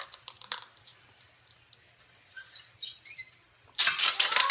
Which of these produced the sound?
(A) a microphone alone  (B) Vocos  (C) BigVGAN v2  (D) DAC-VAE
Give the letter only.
A